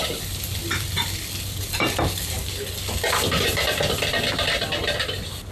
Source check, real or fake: real